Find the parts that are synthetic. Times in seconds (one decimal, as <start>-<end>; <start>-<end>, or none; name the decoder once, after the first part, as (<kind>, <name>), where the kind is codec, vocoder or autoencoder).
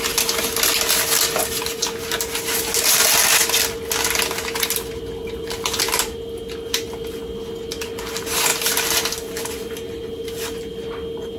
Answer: none